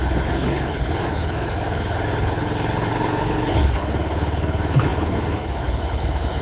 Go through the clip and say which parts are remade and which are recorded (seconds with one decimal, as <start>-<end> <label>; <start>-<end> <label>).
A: 0.0-6.4 remade